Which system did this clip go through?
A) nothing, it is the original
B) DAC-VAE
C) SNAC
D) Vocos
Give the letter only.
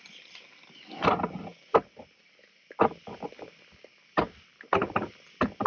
A